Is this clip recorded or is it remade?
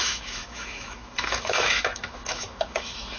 remade